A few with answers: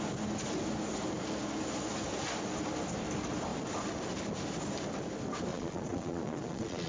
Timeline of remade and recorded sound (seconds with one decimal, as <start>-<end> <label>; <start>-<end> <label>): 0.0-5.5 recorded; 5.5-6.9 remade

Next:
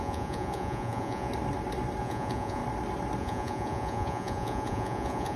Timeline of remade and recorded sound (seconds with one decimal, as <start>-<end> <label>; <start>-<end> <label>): 0.0-1.3 remade; 1.3-2.0 recorded; 2.0-2.6 remade; 2.6-3.2 recorded; 3.2-5.4 remade

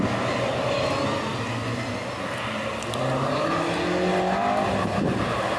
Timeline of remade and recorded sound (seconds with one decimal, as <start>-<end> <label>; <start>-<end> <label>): 0.0-5.6 recorded

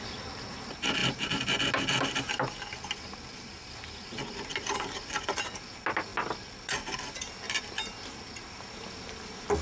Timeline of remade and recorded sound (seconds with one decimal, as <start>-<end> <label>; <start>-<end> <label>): 0.0-9.6 recorded

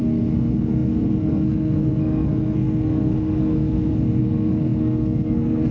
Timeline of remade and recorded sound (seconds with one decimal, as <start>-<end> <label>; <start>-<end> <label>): 0.0-5.7 remade

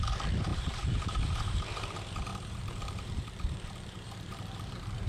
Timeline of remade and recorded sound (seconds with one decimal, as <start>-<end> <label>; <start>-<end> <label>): 0.0-0.5 recorded; 0.5-1.6 remade; 1.6-2.3 recorded; 2.3-5.1 remade